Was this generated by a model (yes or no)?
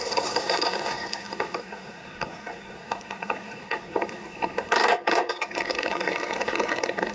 yes